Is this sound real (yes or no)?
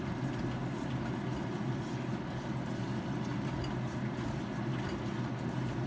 yes